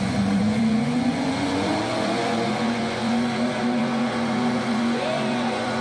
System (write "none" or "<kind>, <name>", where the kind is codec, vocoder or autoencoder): vocoder, Vocos